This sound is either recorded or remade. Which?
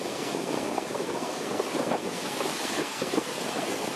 remade